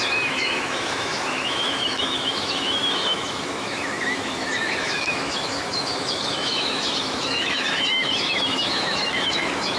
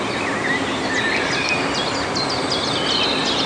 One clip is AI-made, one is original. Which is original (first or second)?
second